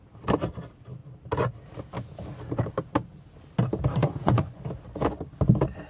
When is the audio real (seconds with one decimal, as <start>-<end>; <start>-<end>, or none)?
0.0-4.0; 4.6-5.9